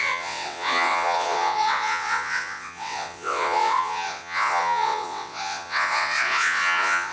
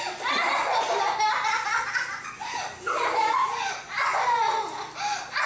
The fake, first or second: first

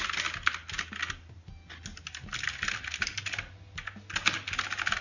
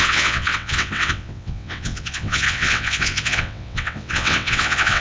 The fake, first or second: second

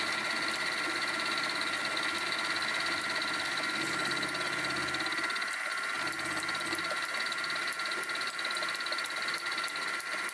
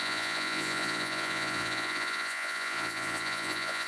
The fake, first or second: second